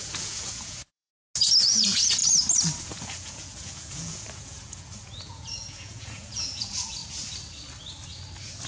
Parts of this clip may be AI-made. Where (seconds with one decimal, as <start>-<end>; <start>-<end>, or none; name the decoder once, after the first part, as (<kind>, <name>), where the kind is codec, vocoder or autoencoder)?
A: 0.0-1.1 (vocoder, Vocos); 1.6-2.2; 2.8-7.0